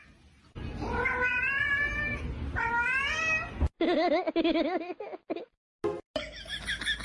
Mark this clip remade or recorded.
recorded